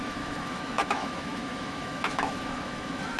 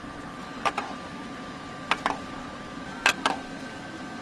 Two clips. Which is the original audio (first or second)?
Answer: second